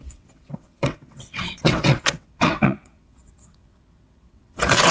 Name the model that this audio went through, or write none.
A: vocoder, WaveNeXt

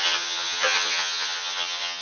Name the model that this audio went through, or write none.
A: vocoder, HiFi-GAN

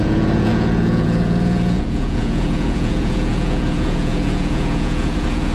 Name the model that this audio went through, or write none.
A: vocoder, Vocos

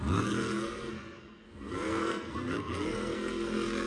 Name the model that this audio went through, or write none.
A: codec, SNAC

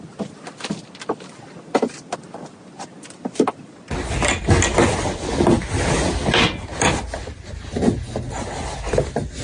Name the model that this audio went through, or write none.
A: none